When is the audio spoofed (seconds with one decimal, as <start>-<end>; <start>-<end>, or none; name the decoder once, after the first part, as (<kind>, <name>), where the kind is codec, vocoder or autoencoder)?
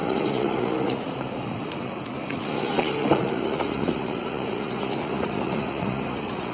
0.0-6.5 (vocoder, Vocos)